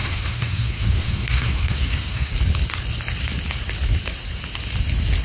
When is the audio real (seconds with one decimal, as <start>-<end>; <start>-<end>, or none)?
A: 2.3-5.2